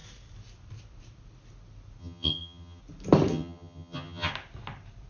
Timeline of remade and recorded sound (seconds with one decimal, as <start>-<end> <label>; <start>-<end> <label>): 0.0-2.0 recorded; 2.0-2.8 remade; 2.8-3.3 recorded; 3.3-4.3 remade; 4.3-5.1 recorded